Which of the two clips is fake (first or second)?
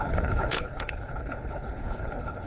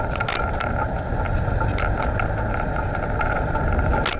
first